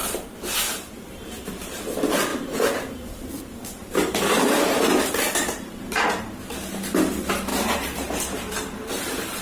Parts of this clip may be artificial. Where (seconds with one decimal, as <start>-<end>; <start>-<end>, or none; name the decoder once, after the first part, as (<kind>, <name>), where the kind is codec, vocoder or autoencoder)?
0.0-1.5 (vocoder, BigVGAN v2); 2.3-6.0; 7.5-9.4